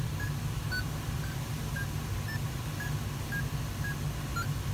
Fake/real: real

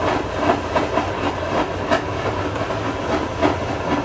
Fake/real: real